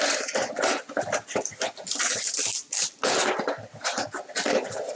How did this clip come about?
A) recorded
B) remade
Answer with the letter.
A